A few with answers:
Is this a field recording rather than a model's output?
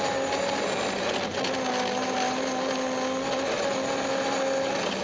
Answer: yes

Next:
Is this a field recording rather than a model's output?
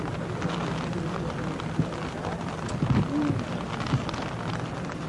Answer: yes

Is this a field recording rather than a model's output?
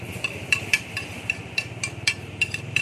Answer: no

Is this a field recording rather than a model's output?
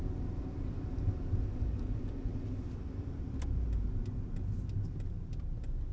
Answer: yes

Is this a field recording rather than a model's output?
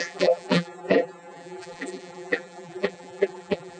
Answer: no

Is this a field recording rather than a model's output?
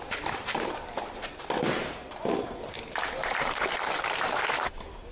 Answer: no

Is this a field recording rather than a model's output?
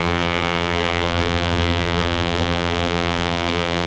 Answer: no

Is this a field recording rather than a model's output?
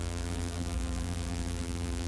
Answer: no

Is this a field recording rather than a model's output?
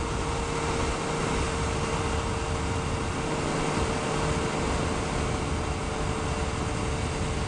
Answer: yes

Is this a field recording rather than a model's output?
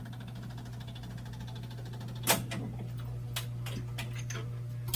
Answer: yes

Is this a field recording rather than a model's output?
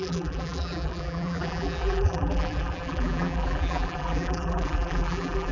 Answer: no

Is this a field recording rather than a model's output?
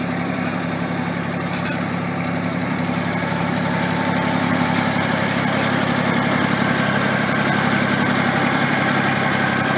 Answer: no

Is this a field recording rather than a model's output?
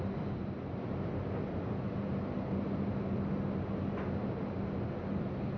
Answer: yes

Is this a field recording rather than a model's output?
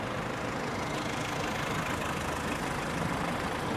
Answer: yes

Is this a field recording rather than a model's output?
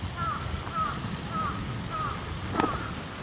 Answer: yes